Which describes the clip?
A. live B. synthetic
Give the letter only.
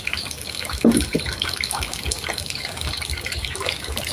B